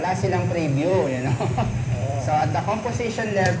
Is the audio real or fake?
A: fake